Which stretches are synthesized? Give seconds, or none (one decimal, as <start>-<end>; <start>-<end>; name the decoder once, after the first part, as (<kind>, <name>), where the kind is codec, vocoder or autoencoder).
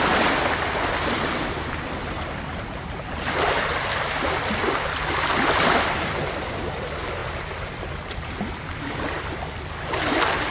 none